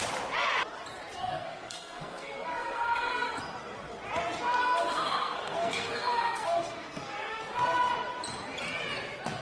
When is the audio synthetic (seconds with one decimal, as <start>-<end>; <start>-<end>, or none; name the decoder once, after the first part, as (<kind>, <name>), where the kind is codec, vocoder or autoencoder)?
1.2-3.4 (codec, SNAC); 4.6-7.4